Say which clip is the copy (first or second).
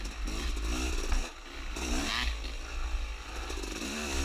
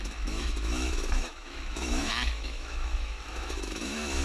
second